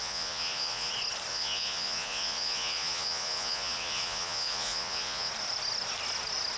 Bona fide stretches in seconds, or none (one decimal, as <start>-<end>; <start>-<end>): 0.9-1.3; 5.3-6.6